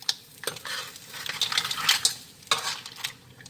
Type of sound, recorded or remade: recorded